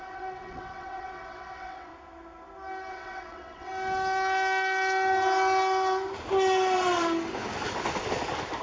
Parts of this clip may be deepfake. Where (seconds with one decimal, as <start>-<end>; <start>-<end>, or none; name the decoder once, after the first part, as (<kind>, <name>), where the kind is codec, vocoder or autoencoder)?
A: 0.0-1.9 (vocoder, WaveNeXt); 2.9-3.7